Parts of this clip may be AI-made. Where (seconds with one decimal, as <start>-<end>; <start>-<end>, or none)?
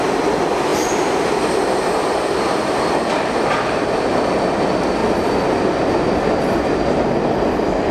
0.7-4.6